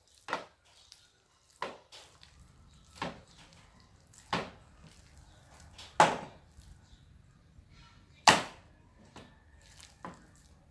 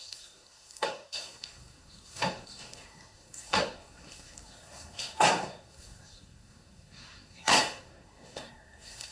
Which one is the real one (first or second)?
first